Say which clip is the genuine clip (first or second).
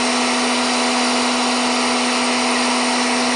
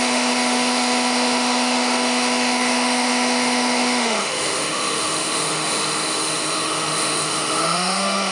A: first